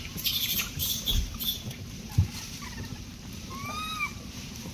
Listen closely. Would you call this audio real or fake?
fake